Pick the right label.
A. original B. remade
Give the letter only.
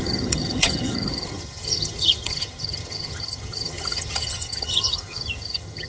B